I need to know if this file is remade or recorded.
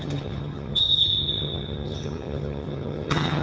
remade